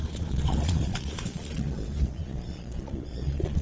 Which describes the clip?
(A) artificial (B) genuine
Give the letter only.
A